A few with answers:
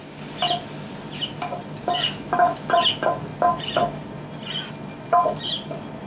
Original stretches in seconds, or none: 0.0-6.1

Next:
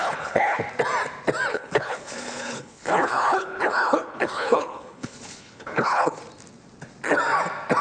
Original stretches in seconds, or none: 0.6-1.5; 6.2-7.8